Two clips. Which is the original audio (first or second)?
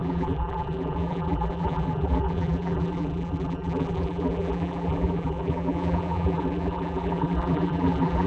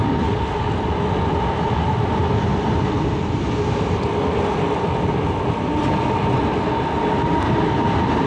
second